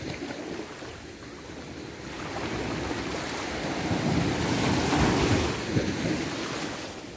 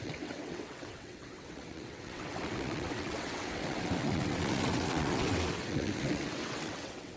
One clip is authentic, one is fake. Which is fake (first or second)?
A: second